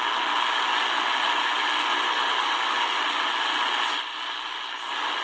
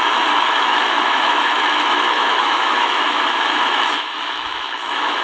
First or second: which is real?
first